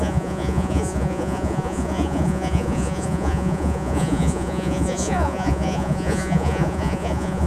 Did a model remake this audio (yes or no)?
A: yes